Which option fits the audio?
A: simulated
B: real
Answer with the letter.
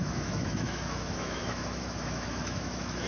A